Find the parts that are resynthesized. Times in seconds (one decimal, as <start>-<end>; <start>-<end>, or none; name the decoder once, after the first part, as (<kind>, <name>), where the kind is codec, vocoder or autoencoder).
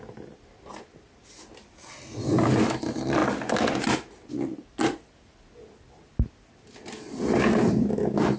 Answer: none